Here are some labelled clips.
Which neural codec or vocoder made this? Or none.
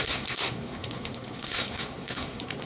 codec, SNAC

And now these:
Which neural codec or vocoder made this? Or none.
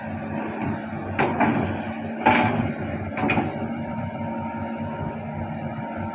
none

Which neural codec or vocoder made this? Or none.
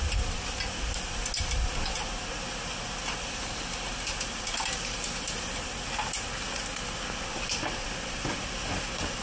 none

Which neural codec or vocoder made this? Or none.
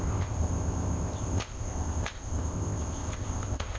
codec, ZipCodec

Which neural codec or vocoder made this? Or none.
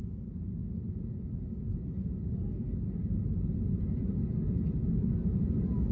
none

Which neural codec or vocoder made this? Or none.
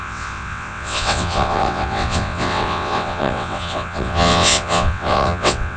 vocoder, WaveNeXt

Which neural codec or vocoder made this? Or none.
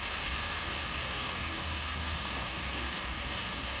codec, DAC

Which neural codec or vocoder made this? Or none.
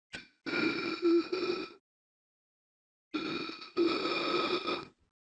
none